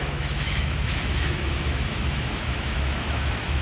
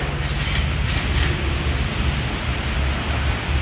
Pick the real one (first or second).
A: second